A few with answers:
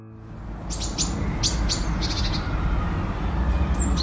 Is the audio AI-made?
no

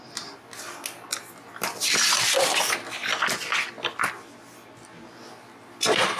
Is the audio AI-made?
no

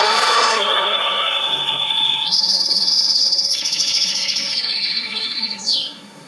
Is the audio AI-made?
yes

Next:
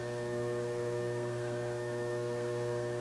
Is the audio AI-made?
yes